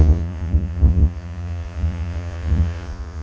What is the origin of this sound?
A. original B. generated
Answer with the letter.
B